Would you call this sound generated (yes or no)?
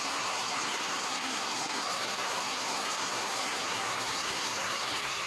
yes